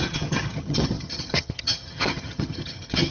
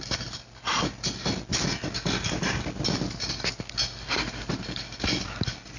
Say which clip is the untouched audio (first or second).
second